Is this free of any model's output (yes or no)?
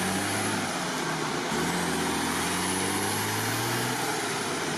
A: yes